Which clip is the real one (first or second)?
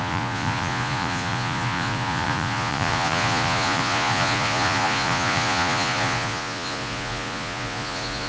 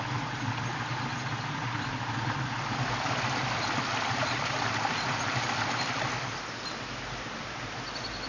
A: second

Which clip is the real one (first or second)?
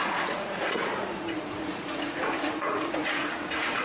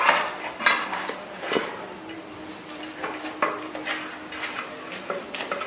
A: second